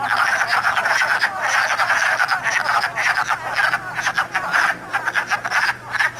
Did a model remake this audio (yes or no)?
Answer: no